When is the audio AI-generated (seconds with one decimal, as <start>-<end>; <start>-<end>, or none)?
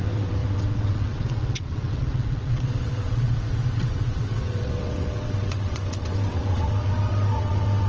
0.0-7.9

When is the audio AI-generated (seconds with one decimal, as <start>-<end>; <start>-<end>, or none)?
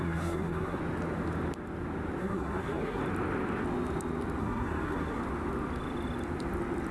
0.0-0.8; 2.2-3.0; 4.4-5.2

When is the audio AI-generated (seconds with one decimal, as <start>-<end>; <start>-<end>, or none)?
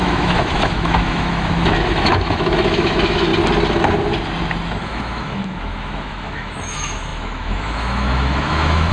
0.0-3.3; 4.8-8.9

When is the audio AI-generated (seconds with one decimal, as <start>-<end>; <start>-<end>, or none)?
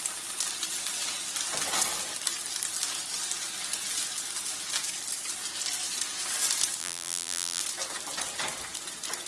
6.8-7.6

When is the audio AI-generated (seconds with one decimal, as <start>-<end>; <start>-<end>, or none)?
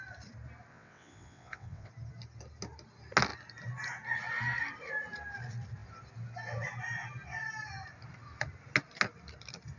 0.7-1.9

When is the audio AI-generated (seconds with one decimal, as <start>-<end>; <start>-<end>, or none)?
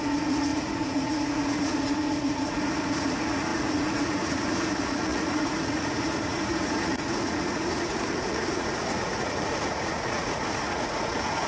0.0-11.5